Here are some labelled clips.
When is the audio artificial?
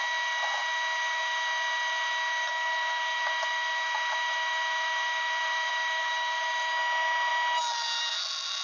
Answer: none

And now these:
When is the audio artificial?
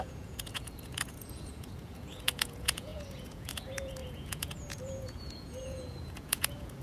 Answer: 0.0-6.8 (vocoder, Vocos)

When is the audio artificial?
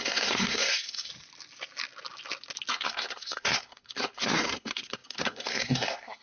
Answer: 0.0-1.1 (codec, SNAC); 2.7-6.2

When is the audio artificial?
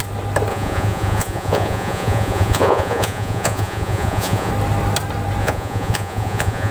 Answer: 0.5-4.5 (vocoder, Vocos); 5.4-6.7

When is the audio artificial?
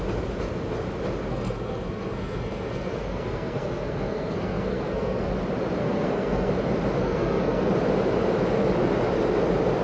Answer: 1.3-5.3 (codec, SNAC); 5.8-6.5; 7.0-7.7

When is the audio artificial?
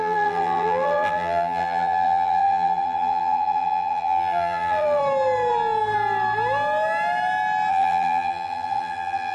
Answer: 0.0-5.0 (vocoder, BigVGAN v2); 7.7-9.3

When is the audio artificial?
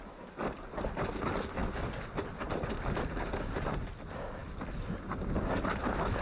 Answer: none